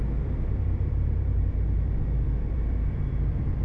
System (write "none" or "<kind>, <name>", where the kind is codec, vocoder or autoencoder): vocoder, BigVGAN v2